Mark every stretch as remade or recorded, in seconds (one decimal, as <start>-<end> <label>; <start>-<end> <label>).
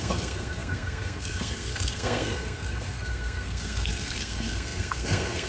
0.0-5.5 remade